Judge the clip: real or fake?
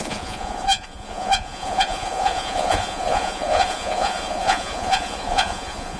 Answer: fake